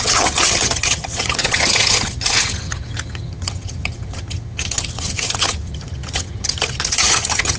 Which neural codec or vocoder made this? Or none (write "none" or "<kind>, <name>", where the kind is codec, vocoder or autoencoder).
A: vocoder, HiFi-GAN